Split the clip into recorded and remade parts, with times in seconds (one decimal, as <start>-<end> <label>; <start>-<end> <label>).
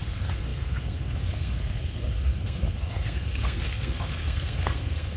0.0-5.2 remade